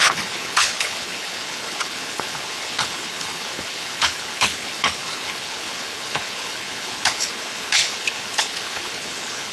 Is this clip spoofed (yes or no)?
yes